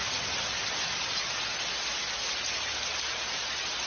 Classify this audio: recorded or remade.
recorded